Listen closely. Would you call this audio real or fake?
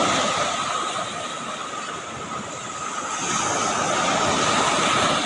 real